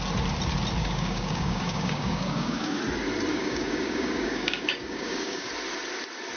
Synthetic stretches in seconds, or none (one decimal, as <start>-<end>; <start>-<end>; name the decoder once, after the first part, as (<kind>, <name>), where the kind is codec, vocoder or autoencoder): 0.8-2.8 (codec, DAC); 3.3-5.5